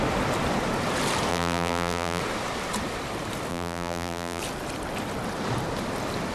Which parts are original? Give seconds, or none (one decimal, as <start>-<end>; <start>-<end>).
0.0-1.3; 2.2-3.5; 4.4-6.3